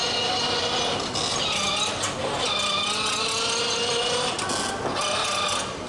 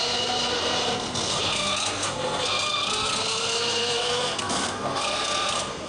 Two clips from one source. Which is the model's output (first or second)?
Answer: second